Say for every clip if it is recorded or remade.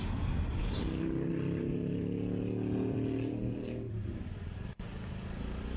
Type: recorded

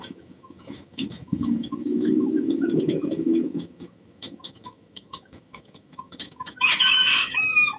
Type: remade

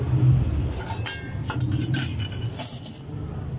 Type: recorded